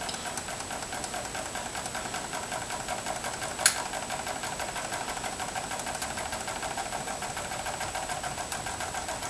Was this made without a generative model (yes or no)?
yes